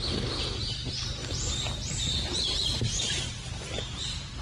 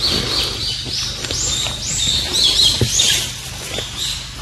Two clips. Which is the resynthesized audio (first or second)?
first